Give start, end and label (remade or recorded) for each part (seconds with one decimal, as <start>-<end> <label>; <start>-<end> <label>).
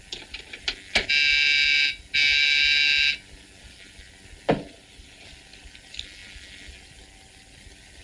0.0-8.0 recorded